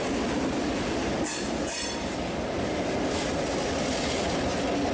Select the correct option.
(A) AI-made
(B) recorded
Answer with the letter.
B